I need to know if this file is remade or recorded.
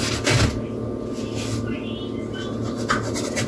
recorded